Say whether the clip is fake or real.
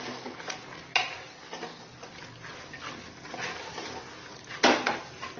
real